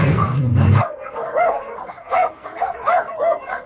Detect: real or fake fake